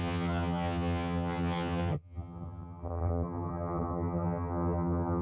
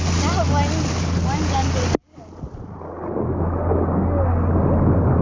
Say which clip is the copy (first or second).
first